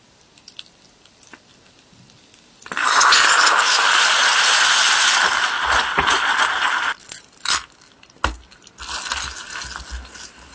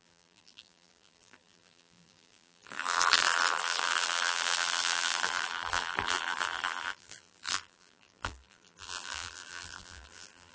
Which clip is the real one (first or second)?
first